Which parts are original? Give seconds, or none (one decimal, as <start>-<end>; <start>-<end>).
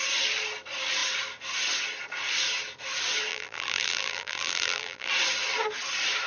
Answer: 0.0-3.3; 5.1-6.3